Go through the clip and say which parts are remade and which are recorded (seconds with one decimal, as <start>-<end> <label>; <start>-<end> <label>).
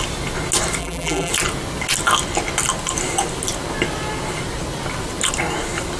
0.0-0.8 recorded; 0.8-1.3 remade; 1.3-6.0 recorded